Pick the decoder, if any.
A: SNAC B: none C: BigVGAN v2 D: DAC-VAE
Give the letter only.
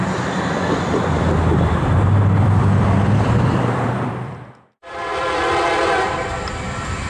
C